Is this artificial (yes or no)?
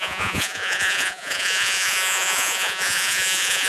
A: yes